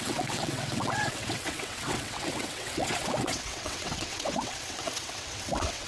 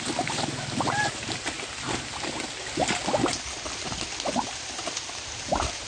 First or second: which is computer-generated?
first